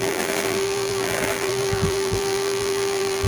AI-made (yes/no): yes